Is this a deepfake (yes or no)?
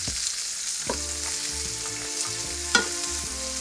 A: no